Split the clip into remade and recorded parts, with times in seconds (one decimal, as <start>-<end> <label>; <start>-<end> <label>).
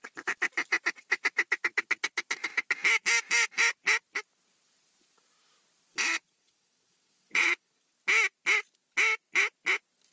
0.0-5.9 recorded; 5.9-7.9 remade; 7.9-10.1 recorded